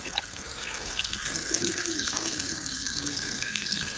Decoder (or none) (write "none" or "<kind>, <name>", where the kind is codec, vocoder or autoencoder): codec, SNAC